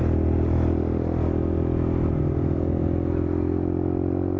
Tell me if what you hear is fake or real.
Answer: real